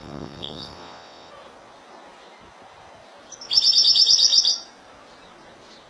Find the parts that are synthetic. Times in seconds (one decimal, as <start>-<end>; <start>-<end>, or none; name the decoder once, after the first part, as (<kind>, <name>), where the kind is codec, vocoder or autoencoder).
0.0-1.3 (vocoder, WaveNeXt)